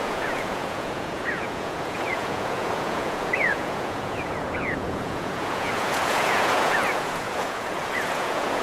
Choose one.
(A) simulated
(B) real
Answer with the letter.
A